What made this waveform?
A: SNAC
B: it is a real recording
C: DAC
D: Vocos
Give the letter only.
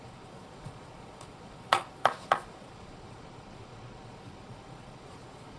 D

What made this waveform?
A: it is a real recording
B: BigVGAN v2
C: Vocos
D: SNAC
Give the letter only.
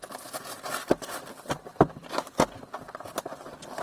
A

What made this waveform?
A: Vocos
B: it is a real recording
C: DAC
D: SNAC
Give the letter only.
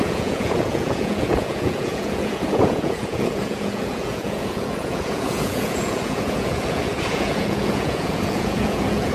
A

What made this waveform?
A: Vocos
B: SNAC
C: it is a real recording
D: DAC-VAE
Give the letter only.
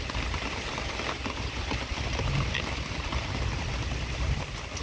C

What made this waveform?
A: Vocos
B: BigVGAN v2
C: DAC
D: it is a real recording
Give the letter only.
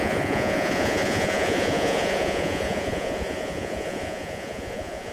A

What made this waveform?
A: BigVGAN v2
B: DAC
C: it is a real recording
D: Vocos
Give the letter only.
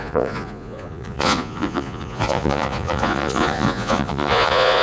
D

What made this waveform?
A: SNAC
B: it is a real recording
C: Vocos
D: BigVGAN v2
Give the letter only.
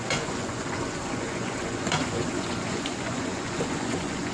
C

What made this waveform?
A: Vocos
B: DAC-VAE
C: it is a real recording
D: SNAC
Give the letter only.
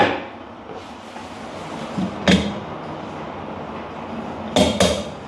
C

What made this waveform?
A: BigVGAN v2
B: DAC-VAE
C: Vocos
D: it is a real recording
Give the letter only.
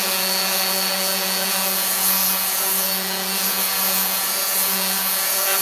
C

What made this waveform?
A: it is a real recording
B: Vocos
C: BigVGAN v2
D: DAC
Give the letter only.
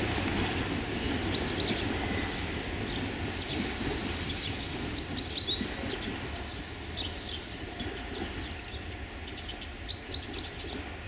A